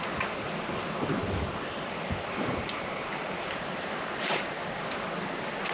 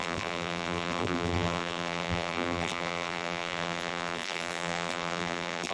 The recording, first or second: first